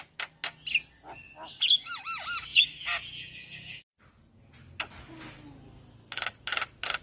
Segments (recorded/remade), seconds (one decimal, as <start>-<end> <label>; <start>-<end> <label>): 0.0-2.5 recorded; 2.5-3.8 remade; 3.8-7.0 recorded